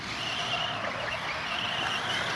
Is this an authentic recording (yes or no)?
yes